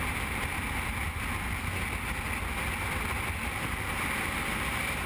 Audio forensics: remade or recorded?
recorded